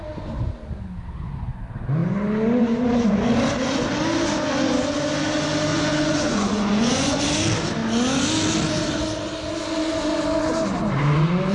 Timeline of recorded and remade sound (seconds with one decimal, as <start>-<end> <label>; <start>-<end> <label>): 0.0-5.7 recorded; 5.7-7.2 remade; 7.2-11.5 recorded